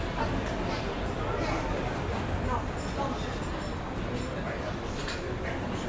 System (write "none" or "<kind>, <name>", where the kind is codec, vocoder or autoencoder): none